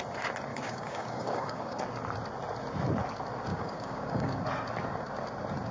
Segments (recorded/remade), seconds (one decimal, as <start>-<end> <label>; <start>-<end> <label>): 0.0-0.5 recorded; 0.5-1.8 remade; 1.8-3.5 recorded; 3.5-4.4 remade; 4.4-5.7 recorded